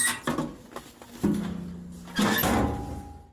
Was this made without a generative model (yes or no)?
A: yes